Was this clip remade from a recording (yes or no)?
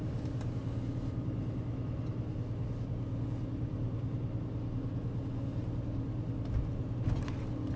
no